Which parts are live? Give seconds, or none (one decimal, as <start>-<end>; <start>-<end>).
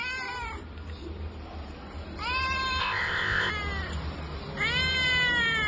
0.0-2.8; 3.5-5.7